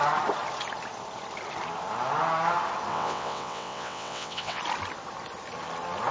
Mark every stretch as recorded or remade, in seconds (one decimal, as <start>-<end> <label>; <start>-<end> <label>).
0.0-2.9 recorded; 2.9-4.6 remade; 4.6-6.1 recorded